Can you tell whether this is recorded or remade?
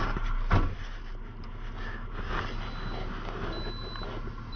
recorded